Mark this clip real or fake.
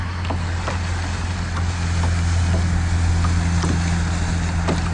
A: real